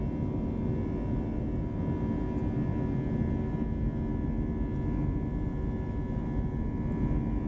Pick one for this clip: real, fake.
real